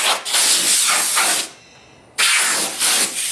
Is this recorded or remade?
recorded